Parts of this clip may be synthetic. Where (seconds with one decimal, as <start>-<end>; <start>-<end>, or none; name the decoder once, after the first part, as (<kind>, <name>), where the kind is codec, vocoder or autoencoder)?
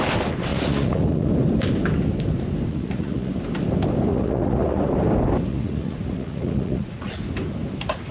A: 0.5-1.3 (vocoder, Vocos); 2.7-3.3; 4.1-4.9; 5.5-7.2